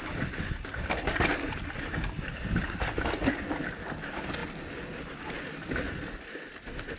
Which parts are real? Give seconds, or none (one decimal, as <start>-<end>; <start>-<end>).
0.0-7.0